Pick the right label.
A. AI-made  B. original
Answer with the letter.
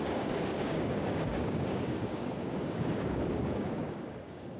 A